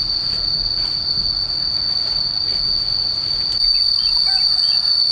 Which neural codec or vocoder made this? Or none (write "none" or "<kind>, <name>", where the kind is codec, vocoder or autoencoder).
none